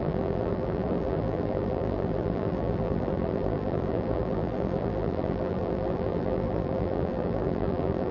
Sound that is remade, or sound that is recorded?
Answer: remade